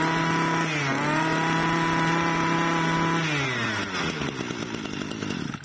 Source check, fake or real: real